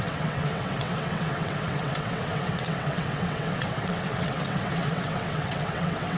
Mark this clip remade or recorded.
remade